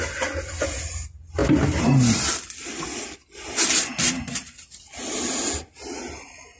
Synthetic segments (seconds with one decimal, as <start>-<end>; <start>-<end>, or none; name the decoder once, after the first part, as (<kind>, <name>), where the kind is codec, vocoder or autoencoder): none